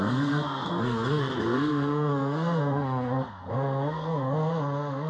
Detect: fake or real fake